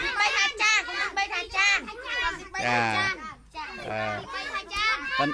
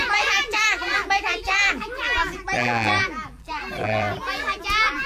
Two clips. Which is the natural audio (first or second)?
first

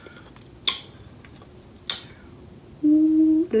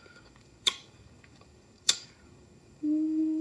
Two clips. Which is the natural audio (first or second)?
first